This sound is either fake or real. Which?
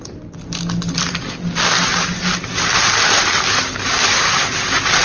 real